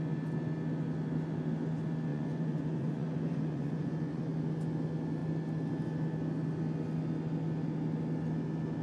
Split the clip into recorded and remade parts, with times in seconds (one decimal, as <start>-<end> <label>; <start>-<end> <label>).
0.0-2.1 recorded; 2.1-4.2 remade; 4.2-8.8 recorded